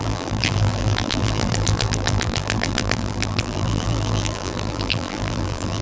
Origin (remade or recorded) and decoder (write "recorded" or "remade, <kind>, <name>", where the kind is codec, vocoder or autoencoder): remade, vocoder, BigVGAN v2